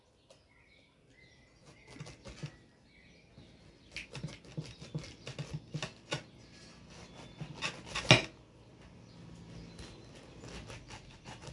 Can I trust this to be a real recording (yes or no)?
yes